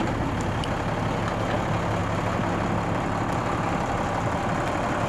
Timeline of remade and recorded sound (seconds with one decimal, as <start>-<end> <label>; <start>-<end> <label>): 0.0-2.0 recorded; 2.0-5.1 remade

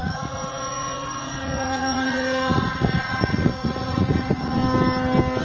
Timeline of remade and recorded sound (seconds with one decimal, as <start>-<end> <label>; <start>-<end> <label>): 0.0-4.6 remade; 4.6-5.4 recorded

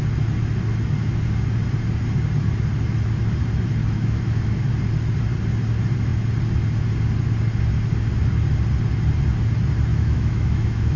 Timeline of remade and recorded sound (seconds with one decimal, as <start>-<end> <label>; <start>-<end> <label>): 0.0-3.8 recorded; 3.8-4.7 remade; 4.7-9.9 recorded; 9.9-11.0 remade

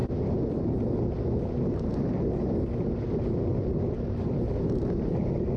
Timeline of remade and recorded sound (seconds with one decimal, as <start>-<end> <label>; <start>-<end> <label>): 0.0-0.9 remade; 0.9-3.5 recorded; 3.5-4.1 remade; 4.1-5.6 recorded

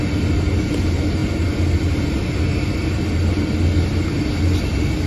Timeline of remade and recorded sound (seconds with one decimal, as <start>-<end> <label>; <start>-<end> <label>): 0.0-5.1 recorded